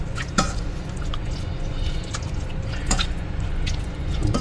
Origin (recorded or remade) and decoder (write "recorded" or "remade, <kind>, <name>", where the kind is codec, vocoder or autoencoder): remade, vocoder, Vocos